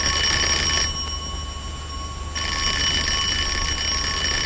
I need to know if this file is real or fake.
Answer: real